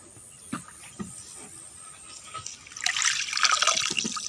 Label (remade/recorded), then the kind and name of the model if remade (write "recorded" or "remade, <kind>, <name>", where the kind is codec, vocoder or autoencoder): recorded